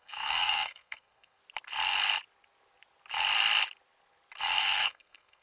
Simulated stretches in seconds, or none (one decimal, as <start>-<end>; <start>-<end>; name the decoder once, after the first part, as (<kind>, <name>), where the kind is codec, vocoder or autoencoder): 0.0-1.4 (codec, SNAC); 4.6-5.4